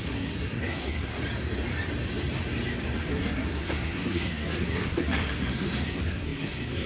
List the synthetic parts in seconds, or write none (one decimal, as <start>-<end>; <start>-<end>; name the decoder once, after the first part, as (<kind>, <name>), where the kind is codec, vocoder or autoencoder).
0.0-1.1 (codec, SNAC); 3.1-6.9